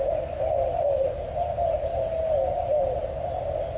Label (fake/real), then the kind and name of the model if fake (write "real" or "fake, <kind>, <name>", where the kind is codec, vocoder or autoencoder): real